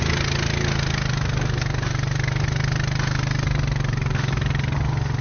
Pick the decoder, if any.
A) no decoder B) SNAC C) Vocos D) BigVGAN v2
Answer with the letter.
A